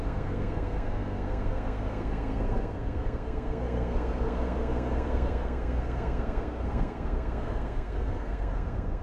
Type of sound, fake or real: fake